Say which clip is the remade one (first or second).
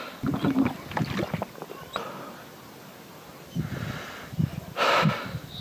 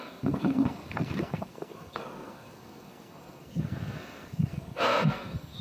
second